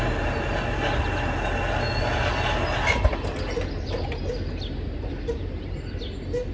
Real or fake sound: real